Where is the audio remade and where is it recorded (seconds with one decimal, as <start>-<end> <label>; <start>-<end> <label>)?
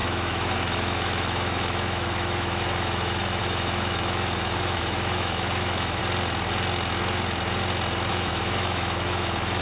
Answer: 0.0-6.0 remade; 6.0-8.1 recorded; 8.1-9.6 remade